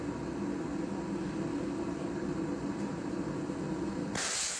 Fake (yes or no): no